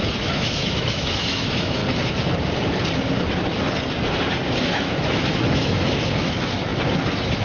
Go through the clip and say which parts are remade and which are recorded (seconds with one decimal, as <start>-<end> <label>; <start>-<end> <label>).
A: 0.0-1.8 remade; 1.8-4.6 recorded; 4.6-6.7 remade; 6.7-7.4 recorded